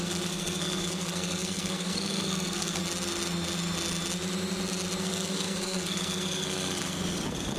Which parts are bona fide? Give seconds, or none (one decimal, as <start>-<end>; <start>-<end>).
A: 2.8-5.0